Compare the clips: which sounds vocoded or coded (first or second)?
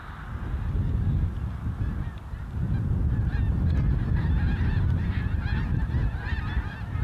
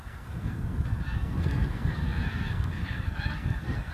second